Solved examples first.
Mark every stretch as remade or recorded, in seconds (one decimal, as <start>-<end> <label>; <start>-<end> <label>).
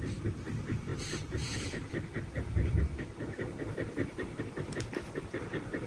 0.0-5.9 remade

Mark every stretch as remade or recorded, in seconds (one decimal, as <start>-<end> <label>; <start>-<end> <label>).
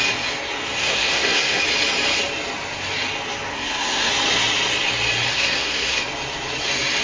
0.0-0.8 recorded; 0.8-1.6 remade; 1.6-3.5 recorded; 3.5-4.1 remade; 4.1-5.3 recorded; 5.3-6.0 remade; 6.0-7.0 recorded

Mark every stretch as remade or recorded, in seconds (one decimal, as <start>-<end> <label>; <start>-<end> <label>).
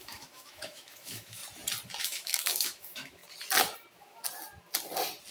0.0-1.4 remade; 1.4-2.0 recorded; 2.0-3.2 remade; 3.2-5.3 recorded